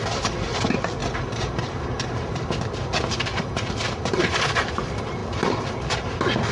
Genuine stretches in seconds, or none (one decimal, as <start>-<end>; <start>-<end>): 0.0-1.0; 2.5-3.3; 4.2-6.5